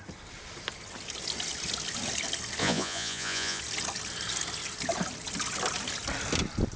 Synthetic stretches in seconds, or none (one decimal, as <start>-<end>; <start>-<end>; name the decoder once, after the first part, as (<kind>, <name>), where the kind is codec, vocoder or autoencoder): 2.6-3.6 (vocoder, Vocos)